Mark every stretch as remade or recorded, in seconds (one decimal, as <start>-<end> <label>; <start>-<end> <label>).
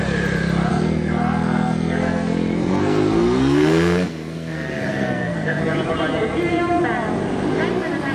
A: 0.0-0.7 recorded; 0.7-5.6 remade; 5.6-8.1 recorded